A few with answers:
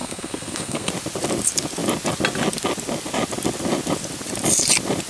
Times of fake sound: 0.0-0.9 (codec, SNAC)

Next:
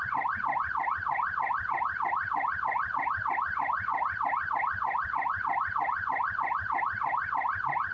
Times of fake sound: none